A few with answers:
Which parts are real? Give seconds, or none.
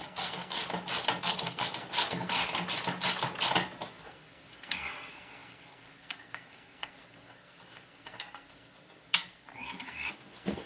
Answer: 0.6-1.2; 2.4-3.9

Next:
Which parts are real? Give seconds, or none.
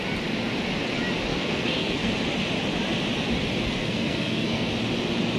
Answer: 0.0-1.3; 2.1-3.8; 4.7-5.4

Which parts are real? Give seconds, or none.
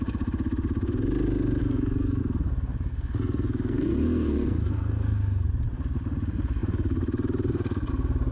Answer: 0.0-1.6; 2.2-2.9; 5.5-8.3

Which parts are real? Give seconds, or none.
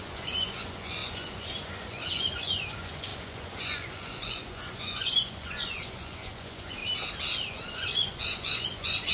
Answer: 6.8-7.5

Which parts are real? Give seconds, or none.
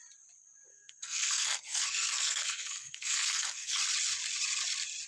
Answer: 0.0-0.7; 3.8-5.1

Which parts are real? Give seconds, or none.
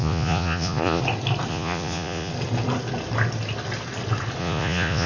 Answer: 1.0-1.5; 2.3-4.4